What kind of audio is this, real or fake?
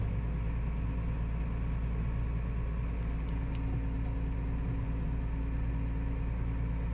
real